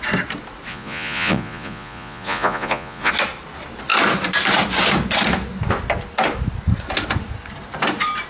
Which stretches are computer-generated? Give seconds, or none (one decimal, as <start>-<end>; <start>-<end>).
0.7-3.1